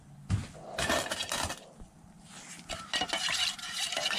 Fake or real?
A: real